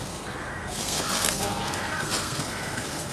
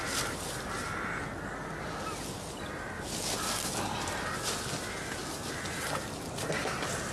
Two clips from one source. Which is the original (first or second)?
second